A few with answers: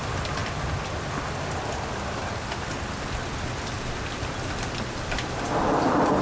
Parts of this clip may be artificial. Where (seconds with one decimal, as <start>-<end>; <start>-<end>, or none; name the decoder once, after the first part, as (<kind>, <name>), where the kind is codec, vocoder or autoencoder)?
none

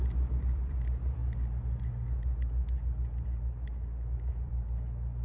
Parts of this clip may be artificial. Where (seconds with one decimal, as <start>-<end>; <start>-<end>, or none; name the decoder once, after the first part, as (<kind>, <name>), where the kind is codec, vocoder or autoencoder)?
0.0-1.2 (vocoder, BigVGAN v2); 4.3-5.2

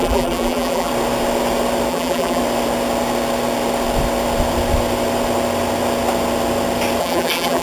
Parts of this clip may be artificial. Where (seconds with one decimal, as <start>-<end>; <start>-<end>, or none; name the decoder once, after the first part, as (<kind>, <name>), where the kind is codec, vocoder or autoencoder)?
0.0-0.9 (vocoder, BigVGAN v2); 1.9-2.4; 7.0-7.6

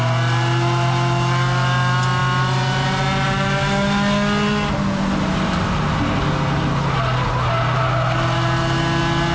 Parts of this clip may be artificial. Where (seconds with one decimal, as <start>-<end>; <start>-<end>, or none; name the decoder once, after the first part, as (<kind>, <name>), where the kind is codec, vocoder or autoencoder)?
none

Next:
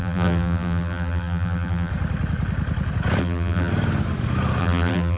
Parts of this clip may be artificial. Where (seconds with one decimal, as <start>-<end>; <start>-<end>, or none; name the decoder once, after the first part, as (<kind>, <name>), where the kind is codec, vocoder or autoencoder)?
0.0-1.9 (vocoder, BigVGAN v2); 3.2-3.7; 4.6-5.2

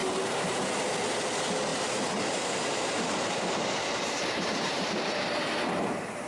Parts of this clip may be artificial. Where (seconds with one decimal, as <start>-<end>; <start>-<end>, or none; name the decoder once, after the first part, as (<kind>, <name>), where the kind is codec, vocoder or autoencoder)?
1.7-5.5 (vocoder, BigVGAN v2)